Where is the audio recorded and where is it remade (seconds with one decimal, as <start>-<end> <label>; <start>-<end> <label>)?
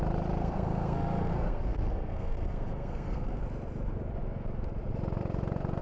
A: 0.0-0.4 recorded; 0.4-3.4 remade; 3.4-5.8 recorded